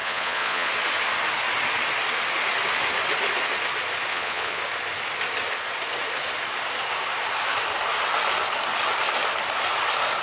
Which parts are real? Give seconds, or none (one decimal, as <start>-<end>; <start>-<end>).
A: 0.7-4.1; 4.6-10.2